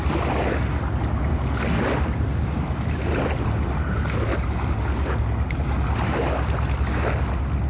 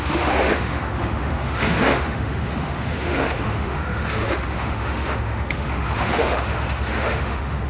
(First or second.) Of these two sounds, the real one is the first